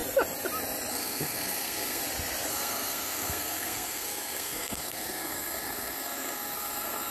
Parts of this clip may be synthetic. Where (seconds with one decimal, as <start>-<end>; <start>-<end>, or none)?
0.9-2.0; 2.5-7.1